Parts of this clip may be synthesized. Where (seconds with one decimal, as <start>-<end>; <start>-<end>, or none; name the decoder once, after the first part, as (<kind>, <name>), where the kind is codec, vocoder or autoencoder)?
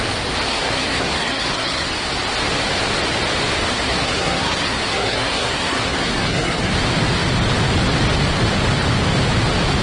0.5-1.9 (codec, SNAC); 3.7-6.7